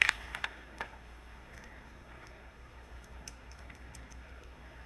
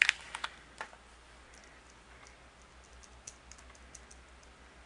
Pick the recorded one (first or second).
second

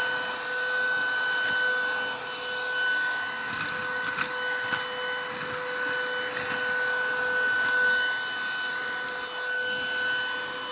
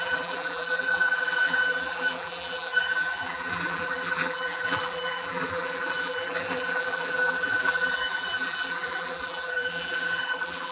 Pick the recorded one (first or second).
first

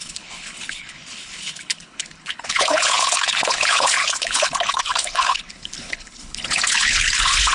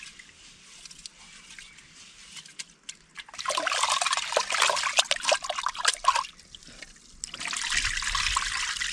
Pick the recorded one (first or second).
second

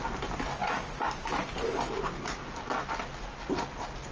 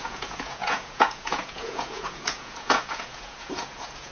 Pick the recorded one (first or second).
first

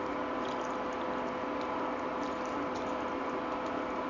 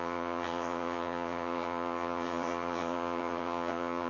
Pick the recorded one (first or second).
first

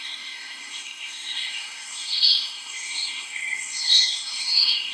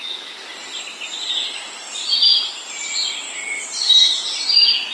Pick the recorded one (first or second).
second